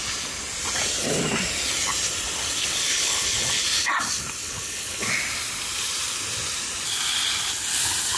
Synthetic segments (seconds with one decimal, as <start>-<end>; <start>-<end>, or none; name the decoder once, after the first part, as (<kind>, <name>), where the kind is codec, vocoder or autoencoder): 2.9-3.6 (codec, HILCodec); 4.4-5.1